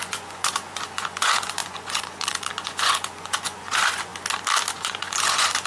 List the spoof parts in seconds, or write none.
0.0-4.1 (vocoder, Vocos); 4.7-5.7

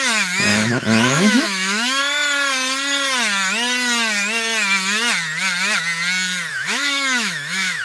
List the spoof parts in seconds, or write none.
0.5-2.0 (autoencoder, DAC-VAE); 6.5-7.8

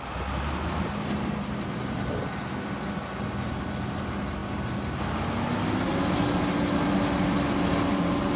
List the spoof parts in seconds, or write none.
none

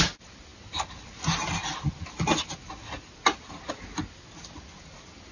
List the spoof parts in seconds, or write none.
none

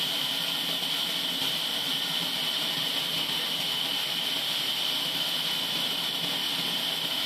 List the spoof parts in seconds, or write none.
none